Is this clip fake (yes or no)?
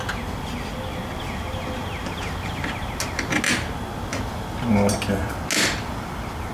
no